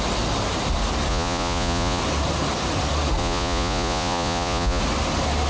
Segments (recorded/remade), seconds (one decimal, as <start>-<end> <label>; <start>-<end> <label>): 0.0-1.1 recorded; 1.1-2.0 remade; 2.0-3.2 recorded; 3.2-4.8 remade; 4.8-5.5 recorded